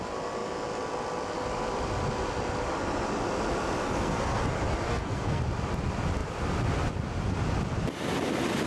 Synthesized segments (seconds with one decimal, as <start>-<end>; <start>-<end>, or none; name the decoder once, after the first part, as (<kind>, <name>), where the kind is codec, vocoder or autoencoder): 3.8-4.4 (codec, SNAC); 4.9-5.4